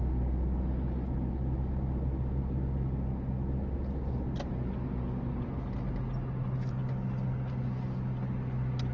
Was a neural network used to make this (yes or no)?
no